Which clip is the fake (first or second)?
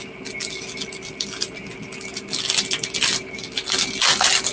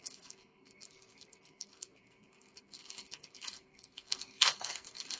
second